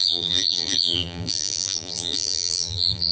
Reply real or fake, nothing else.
fake